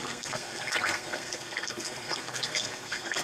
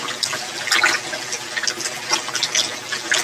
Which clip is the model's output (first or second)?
first